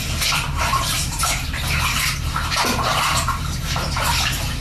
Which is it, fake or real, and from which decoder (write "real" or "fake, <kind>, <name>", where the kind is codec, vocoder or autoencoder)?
fake, vocoder, BigVGAN v2